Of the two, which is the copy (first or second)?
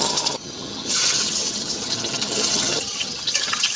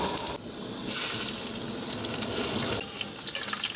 first